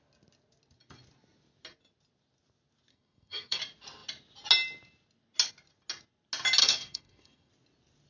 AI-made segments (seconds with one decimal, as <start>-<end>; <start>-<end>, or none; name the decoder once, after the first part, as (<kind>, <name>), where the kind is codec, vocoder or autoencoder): 2.9-3.6 (codec, SNAC); 6.6-7.5